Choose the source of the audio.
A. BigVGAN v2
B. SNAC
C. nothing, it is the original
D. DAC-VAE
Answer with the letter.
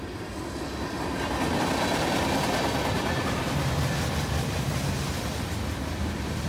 C